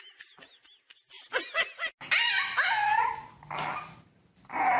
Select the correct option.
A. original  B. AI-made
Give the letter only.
A